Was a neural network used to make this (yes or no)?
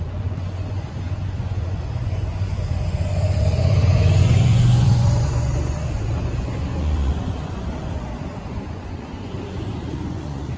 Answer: yes